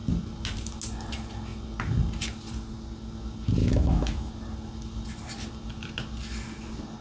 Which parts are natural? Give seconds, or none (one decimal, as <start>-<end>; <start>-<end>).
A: 0.0-3.6; 4.3-7.0